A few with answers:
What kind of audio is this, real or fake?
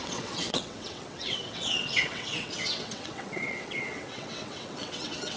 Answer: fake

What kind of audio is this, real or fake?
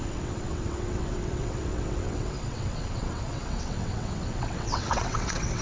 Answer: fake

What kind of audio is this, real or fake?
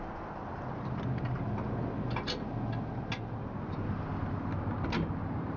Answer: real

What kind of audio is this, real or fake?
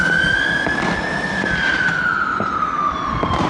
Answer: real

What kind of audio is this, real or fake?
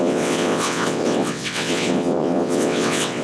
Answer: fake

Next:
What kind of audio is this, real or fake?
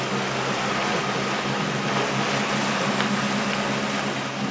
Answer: real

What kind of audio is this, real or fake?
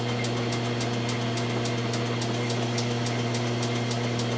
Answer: real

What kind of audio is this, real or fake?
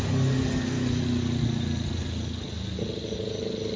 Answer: real